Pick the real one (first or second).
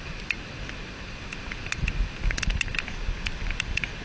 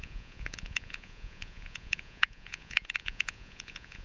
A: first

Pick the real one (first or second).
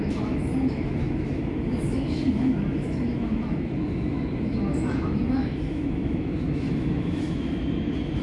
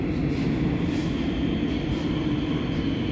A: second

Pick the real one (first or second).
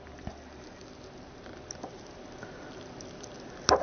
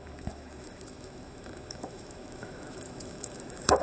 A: first